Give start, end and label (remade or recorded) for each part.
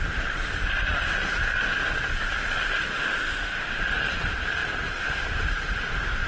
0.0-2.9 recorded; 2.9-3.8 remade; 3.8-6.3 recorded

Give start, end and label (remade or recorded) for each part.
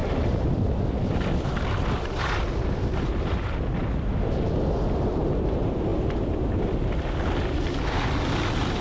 0.0-8.8 recorded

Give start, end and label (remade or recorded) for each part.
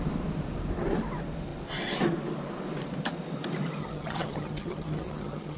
0.0-3.8 recorded; 3.8-5.6 remade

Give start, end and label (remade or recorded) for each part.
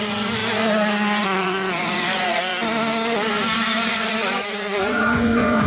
0.0-0.4 remade; 0.4-1.2 recorded; 1.2-2.5 remade; 2.5-3.9 recorded; 3.9-5.7 remade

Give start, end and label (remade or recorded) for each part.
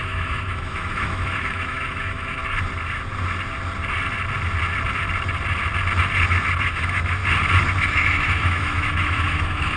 0.0-2.4 remade; 2.4-6.6 recorded; 6.6-7.2 remade; 7.2-7.9 recorded; 7.9-9.8 remade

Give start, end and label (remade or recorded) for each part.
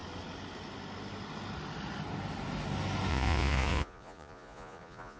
0.0-3.1 recorded; 3.1-5.2 remade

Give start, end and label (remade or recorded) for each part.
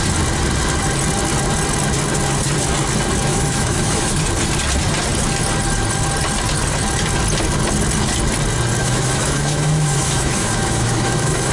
0.0-3.3 recorded; 3.3-4.2 remade; 4.2-8.8 recorded; 8.8-11.5 remade